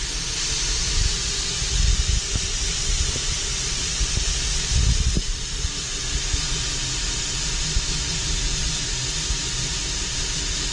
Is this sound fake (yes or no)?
no